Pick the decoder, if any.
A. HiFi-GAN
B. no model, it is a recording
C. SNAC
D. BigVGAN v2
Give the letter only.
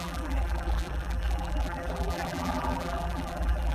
D